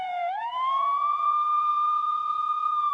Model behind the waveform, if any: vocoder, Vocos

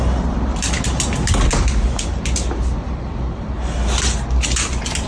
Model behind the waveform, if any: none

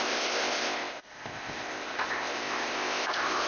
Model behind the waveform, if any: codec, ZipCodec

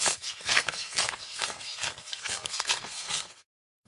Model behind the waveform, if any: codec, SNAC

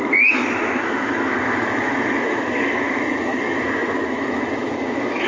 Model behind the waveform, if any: autoencoder, DAC-VAE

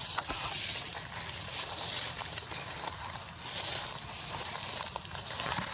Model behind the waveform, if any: none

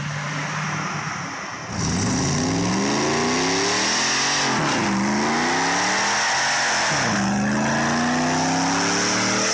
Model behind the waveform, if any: none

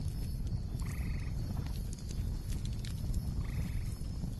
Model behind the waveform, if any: none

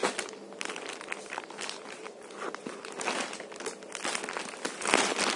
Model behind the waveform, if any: none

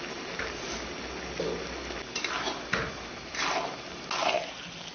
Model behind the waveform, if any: none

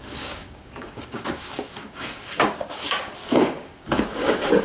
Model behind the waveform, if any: codec, DAC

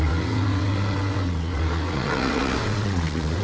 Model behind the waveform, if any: vocoder, WaveNeXt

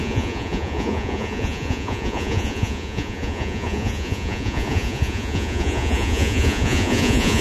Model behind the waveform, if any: vocoder, Vocos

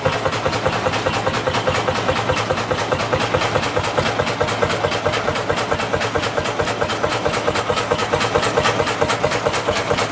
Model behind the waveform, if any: none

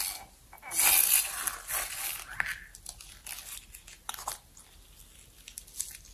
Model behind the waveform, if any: none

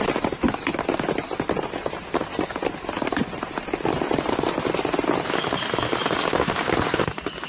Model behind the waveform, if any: none